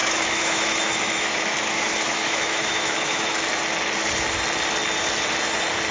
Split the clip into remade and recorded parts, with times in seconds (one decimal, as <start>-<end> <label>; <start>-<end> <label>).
0.0-3.5 remade; 3.5-5.9 recorded